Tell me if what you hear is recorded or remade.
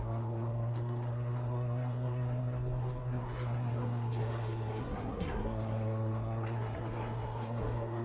remade